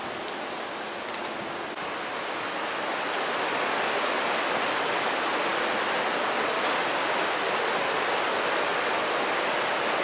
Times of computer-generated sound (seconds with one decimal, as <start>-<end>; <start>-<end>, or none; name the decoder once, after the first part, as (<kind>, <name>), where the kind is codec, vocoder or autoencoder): none